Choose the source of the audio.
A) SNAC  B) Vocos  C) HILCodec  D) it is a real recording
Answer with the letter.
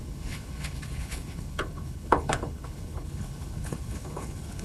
C